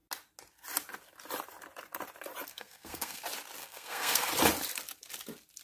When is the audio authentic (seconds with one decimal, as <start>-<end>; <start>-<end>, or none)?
0.0-2.5; 3.2-3.6; 4.3-5.6